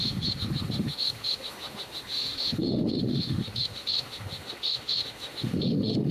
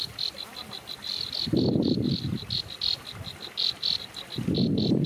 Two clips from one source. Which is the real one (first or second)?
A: second